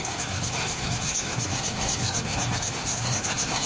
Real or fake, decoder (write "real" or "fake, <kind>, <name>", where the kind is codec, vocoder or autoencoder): fake, codec, SNAC